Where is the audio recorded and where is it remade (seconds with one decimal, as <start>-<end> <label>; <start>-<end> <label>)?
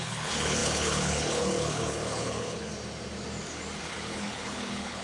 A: 0.0-2.7 remade; 2.7-3.8 recorded; 3.8-5.0 remade